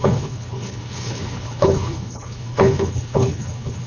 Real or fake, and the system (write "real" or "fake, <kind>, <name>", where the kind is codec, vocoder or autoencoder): fake, codec, HILCodec